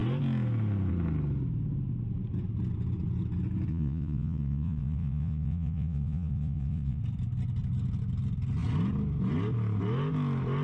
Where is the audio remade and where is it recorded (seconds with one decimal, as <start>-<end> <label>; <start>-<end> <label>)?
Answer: 0.0-3.7 recorded; 3.7-7.0 remade; 7.0-10.6 recorded